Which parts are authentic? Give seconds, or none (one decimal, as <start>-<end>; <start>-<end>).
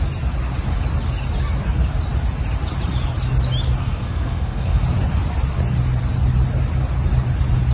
0.0-3.8; 4.8-7.7